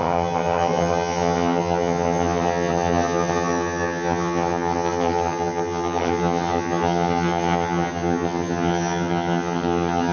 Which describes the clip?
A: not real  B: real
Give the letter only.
A